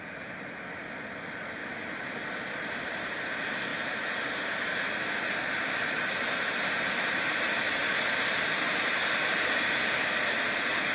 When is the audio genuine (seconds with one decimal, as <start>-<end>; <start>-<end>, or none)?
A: 0.0-10.9